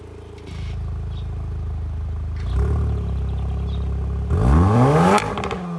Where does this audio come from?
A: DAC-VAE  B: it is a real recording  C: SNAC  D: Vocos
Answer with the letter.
B